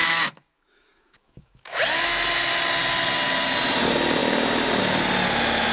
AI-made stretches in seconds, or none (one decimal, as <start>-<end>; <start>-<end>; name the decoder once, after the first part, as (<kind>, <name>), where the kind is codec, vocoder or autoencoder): 0.0-1.8 (autoencoder, DAC-VAE)